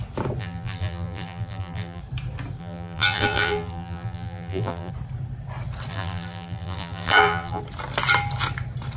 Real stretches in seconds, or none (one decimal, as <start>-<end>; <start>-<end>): 0.0-0.4; 2.0-2.6; 4.9-5.9; 7.6-9.0